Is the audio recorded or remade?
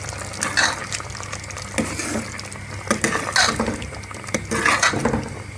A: recorded